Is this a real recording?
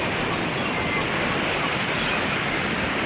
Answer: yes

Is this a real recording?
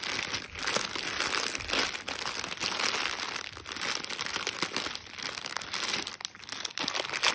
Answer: yes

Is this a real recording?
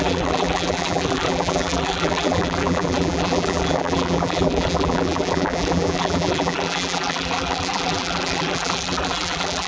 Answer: no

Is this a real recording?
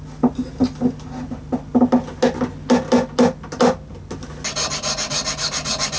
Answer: yes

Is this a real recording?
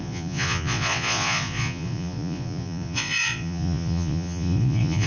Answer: no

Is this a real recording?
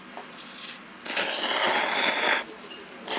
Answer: yes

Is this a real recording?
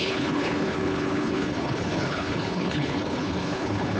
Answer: no